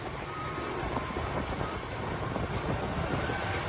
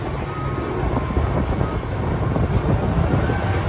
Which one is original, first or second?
second